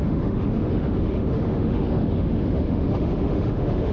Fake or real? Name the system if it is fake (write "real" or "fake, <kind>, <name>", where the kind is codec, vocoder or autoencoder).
fake, autoencoder, DAC-VAE